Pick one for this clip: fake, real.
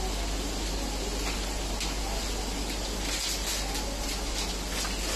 real